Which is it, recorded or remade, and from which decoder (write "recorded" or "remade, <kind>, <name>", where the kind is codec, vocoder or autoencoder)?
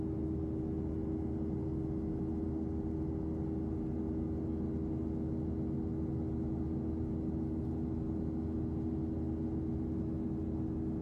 recorded